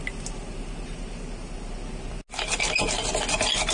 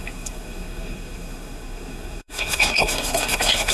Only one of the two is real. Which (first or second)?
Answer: first